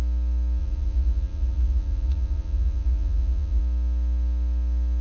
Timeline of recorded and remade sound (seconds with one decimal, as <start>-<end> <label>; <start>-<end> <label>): 0.0-0.6 recorded; 0.6-3.6 remade; 3.6-5.0 recorded